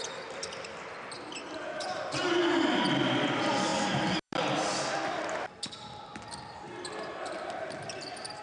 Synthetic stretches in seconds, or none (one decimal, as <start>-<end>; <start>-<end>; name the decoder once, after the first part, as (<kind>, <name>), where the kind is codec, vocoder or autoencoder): none